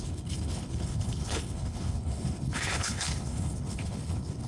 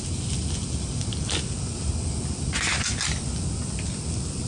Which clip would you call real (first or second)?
second